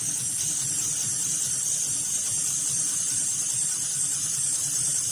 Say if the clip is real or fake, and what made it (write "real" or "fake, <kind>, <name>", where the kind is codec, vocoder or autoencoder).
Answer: fake, vocoder, BigVGAN v2